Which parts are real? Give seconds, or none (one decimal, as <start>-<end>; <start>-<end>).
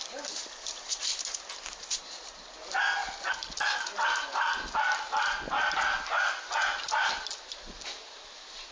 3.0-7.7